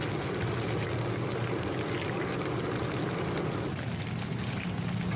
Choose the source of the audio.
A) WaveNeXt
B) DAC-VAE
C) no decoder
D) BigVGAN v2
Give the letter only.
C